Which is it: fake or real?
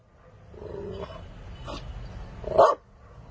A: real